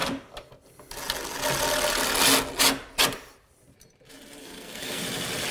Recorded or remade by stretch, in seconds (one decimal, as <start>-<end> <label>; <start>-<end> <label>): 0.0-4.4 recorded; 4.4-5.0 remade; 5.0-5.5 recorded

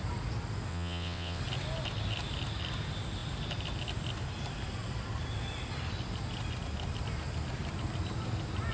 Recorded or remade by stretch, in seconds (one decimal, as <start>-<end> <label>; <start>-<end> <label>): 0.0-0.7 recorded; 0.7-1.4 remade; 1.4-8.7 recorded